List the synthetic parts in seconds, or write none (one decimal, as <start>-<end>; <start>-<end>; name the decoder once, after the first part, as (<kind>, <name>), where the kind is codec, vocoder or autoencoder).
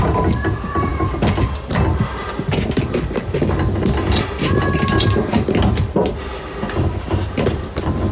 none